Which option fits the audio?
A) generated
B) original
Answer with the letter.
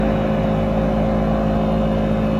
B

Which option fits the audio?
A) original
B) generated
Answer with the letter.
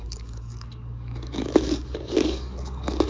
B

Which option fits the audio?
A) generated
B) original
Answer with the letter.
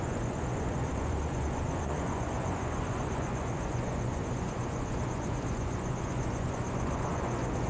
A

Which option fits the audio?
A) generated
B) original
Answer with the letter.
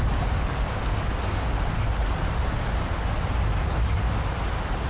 B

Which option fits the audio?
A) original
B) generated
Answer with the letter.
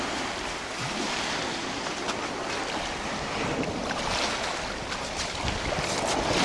A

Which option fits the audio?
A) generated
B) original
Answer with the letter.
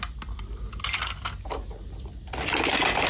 B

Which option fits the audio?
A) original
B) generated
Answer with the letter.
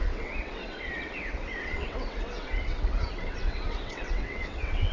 B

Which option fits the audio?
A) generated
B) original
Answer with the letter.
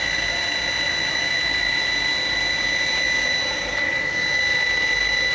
B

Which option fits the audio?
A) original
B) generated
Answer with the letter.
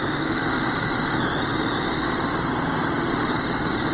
B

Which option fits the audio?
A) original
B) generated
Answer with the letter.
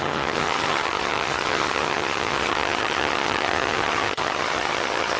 B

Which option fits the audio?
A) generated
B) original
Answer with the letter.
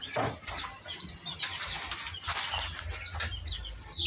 B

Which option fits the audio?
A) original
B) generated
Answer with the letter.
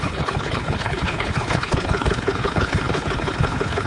B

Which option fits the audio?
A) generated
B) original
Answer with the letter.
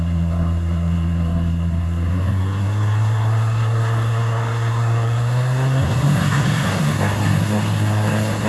A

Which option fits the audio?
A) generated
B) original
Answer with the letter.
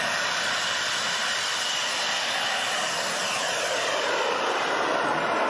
A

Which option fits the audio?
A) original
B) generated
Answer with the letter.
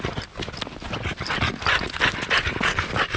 A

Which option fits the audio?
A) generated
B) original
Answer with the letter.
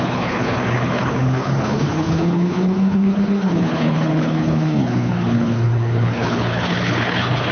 A